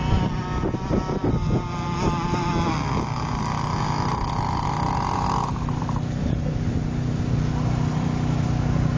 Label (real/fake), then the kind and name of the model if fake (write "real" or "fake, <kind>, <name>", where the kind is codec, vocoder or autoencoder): real